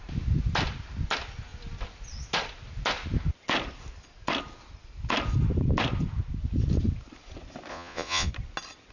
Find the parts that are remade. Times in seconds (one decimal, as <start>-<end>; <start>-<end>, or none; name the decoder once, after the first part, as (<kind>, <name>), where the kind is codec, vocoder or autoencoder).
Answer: 7.7-8.3 (vocoder, Vocos)